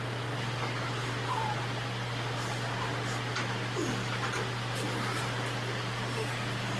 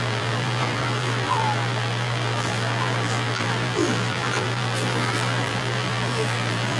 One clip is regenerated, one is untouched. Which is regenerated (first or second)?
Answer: second